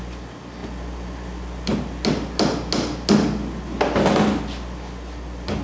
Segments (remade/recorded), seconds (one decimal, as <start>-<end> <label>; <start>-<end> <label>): 0.0-5.6 recorded